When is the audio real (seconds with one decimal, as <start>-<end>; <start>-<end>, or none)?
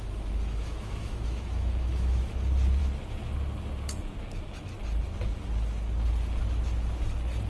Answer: 2.3-7.5